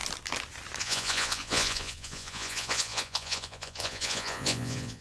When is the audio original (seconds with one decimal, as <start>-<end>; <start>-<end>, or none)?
0.0-0.8